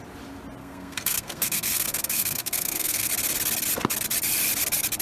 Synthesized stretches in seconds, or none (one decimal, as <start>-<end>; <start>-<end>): 0.6-3.1